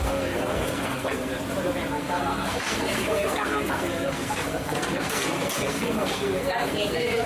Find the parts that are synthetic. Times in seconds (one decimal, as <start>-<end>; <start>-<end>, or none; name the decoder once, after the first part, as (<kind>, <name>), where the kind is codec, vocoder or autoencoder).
0.0-1.3 (codec, SNAC); 1.9-7.3